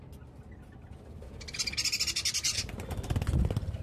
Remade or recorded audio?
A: recorded